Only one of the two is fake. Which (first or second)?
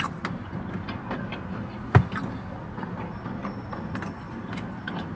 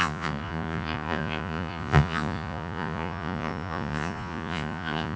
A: second